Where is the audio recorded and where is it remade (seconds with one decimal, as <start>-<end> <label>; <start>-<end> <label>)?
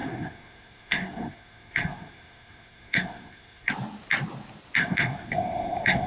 0.0-3.7 remade; 3.7-4.8 recorded; 4.8-6.1 remade